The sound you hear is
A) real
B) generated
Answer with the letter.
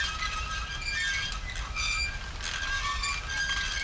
A